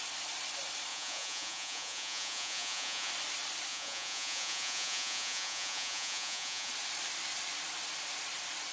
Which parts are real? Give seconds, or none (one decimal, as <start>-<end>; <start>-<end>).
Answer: 0.0-0.9; 3.1-3.7; 6.7-8.7